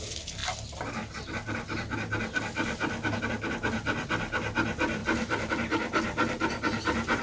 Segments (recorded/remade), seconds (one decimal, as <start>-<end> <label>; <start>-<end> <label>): 0.0-7.2 recorded